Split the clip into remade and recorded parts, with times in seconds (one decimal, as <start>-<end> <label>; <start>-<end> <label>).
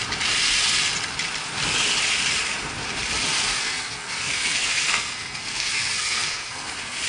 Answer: 0.0-3.6 recorded; 3.6-7.1 remade